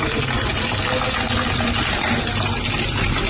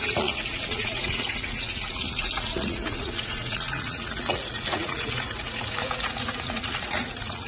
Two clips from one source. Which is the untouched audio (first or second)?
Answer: first